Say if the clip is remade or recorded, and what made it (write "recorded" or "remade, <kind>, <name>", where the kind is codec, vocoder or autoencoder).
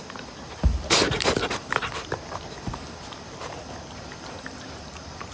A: recorded